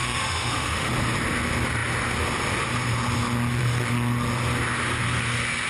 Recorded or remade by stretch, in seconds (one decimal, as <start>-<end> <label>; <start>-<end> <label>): 0.0-0.9 remade; 0.9-5.7 recorded